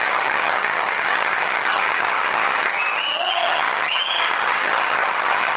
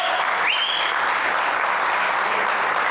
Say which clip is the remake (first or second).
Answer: first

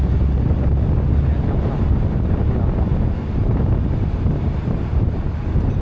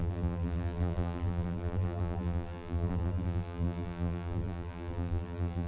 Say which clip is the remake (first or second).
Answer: second